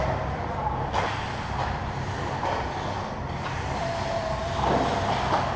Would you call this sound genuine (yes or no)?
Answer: yes